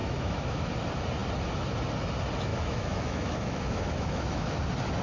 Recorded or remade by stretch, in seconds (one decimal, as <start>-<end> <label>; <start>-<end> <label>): 0.0-0.7 remade; 0.7-2.5 recorded; 2.5-4.6 remade; 4.6-5.0 recorded